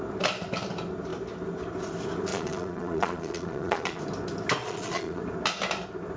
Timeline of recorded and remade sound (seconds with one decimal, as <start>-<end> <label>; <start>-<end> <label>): 0.0-2.3 recorded; 2.3-4.0 remade; 4.0-4.6 recorded; 4.6-5.2 remade; 5.2-6.2 recorded

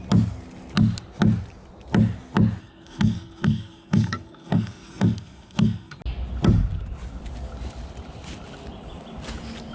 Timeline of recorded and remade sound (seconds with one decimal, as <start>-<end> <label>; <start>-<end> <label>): 0.0-2.6 recorded; 2.6-6.0 remade; 6.0-9.7 recorded

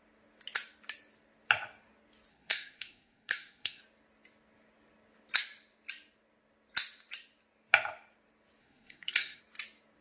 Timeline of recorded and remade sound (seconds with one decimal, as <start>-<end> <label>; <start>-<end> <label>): 0.0-2.3 recorded; 2.3-3.8 remade; 3.8-8.6 recorded; 8.6-9.4 remade; 9.4-10.0 recorded

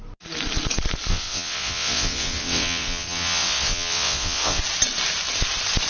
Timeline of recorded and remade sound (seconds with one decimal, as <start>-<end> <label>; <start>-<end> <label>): 0.0-1.1 recorded; 1.1-4.6 remade; 4.6-5.9 recorded

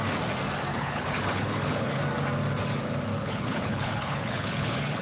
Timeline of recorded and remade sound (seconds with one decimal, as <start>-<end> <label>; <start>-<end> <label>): 0.0-0.7 recorded; 0.7-2.0 remade; 2.0-3.1 recorded; 3.1-5.0 remade

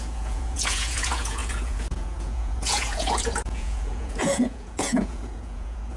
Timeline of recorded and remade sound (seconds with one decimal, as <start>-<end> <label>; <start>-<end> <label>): 0.0-6.0 remade